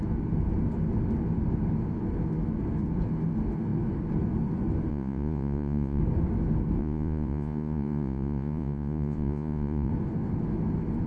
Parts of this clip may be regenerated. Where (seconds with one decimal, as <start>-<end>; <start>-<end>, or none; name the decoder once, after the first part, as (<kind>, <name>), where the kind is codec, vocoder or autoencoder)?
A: 4.9-6.0 (vocoder, Vocos); 6.8-9.9